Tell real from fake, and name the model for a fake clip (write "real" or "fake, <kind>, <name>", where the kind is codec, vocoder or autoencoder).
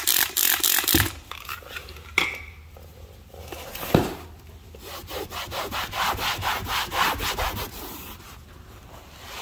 real